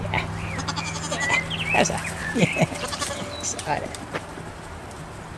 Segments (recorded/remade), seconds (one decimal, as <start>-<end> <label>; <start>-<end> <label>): 0.0-2.2 recorded; 2.2-5.0 remade; 5.0-5.4 recorded